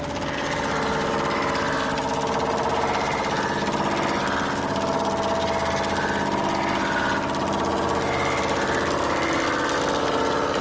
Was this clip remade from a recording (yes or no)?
no